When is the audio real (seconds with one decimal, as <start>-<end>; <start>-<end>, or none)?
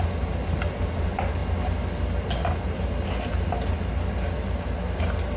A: 0.0-5.4